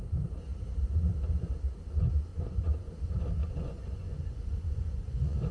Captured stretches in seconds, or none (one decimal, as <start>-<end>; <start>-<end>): 0.0-2.3; 2.9-3.4